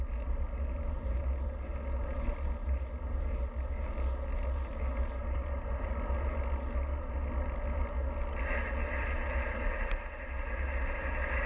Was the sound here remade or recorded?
recorded